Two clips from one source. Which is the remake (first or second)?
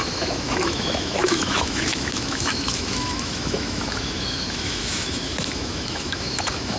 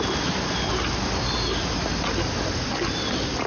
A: first